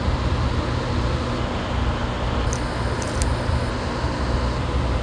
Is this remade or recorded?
recorded